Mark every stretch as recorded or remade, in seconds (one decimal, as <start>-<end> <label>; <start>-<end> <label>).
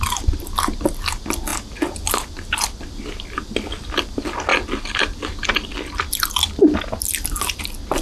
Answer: 0.0-8.0 recorded